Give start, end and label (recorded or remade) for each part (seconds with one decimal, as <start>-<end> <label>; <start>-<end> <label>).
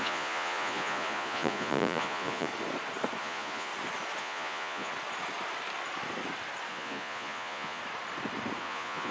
0.0-2.5 remade; 2.5-3.2 recorded; 3.2-3.7 remade; 3.7-4.2 recorded; 4.2-4.9 remade; 4.9-6.7 recorded; 6.7-7.8 remade; 7.8-8.6 recorded; 8.6-9.1 remade